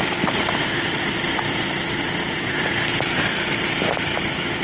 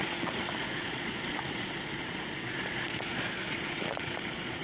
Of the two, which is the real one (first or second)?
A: first